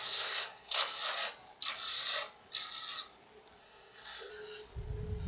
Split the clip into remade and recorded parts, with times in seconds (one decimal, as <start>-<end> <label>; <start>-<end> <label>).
0.0-0.8 remade; 0.8-3.6 recorded; 3.6-4.3 remade; 4.3-5.3 recorded